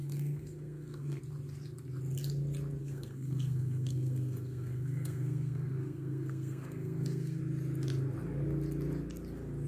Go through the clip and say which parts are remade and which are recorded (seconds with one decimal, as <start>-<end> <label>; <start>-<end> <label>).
0.0-1.2 remade; 1.2-2.8 recorded; 2.8-7.4 remade; 7.4-9.7 recorded

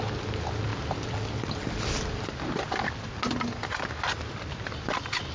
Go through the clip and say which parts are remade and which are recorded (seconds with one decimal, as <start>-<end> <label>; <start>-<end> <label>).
0.0-5.3 recorded

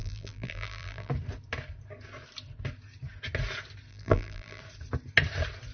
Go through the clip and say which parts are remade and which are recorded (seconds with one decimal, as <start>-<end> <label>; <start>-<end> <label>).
0.0-1.1 remade; 1.1-3.9 recorded; 3.9-4.6 remade; 4.6-5.7 recorded

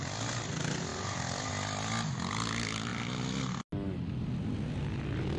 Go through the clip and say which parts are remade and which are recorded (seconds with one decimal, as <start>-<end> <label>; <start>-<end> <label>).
0.0-5.4 recorded